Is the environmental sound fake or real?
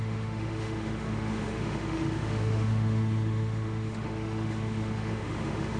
fake